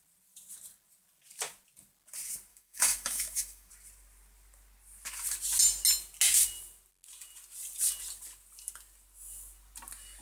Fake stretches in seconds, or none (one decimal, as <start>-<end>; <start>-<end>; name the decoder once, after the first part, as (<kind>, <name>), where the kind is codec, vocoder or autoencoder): 2.5-3.7 (autoencoder, DAC-VAE)